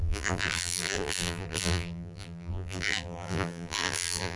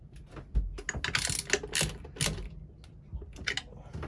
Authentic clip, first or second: second